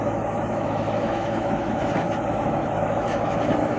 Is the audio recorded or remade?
remade